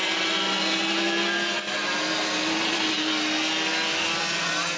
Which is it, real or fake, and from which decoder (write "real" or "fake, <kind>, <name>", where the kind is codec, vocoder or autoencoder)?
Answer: real